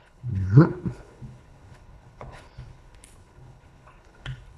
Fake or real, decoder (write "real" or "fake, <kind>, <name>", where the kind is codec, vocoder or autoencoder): fake, codec, HILCodec